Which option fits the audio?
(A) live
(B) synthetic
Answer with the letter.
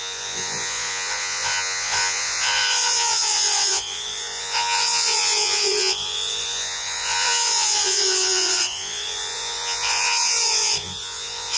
B